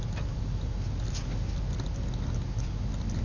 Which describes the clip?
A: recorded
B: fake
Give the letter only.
A